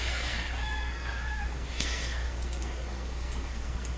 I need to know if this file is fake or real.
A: fake